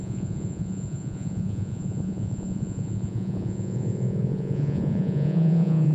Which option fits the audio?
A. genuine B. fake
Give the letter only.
B